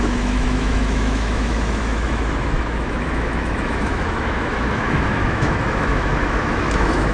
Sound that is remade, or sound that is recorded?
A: remade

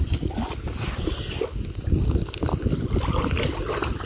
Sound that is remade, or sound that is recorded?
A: recorded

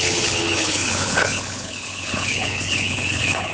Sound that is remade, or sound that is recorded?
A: remade